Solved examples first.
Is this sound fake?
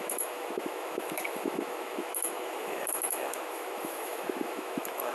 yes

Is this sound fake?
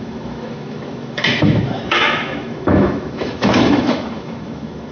yes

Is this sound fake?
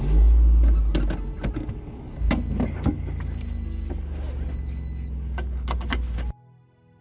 no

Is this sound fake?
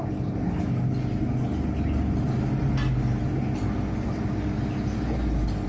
no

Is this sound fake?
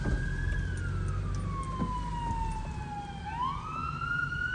no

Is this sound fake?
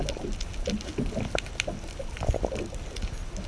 no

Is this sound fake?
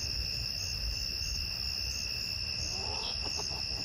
no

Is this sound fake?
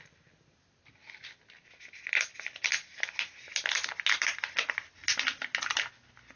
no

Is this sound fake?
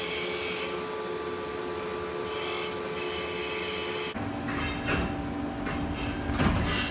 no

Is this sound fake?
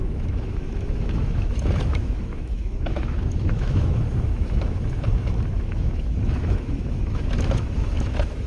yes